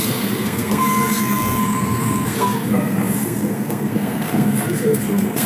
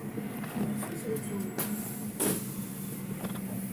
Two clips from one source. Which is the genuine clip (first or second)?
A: second